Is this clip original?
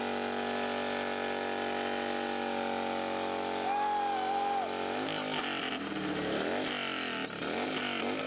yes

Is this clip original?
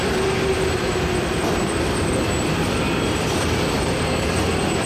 no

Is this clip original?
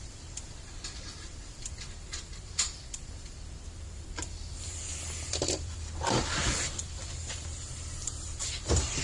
no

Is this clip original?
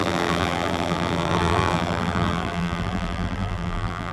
no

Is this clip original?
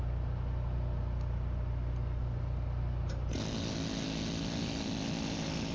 yes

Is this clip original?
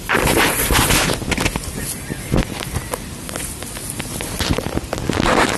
yes